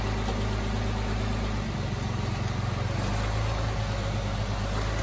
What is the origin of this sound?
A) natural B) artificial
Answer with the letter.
A